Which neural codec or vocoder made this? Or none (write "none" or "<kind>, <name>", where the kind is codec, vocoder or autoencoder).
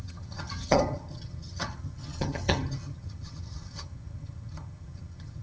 vocoder, HiFi-GAN